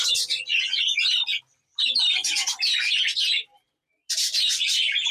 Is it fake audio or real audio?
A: real